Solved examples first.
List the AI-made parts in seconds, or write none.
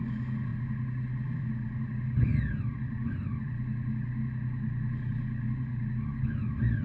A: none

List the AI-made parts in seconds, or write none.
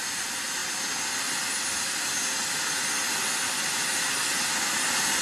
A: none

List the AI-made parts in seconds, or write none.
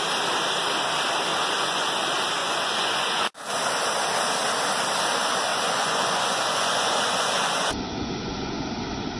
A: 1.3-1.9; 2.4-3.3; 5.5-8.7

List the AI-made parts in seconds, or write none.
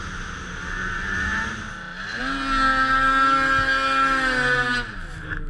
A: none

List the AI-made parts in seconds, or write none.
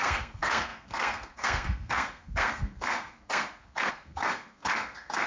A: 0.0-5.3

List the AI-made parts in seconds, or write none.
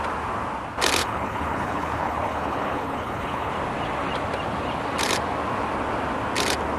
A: 1.0-3.5